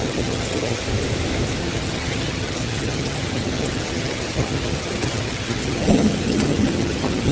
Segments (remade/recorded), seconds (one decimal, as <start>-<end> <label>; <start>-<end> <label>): 0.0-0.8 remade; 0.8-1.6 recorded; 1.6-7.3 remade